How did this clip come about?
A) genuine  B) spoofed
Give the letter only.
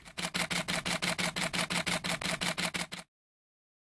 A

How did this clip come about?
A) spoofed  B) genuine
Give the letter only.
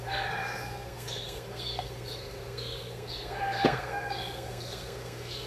A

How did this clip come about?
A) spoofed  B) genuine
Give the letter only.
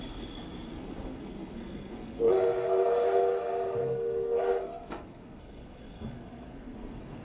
A